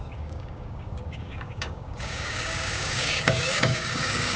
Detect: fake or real fake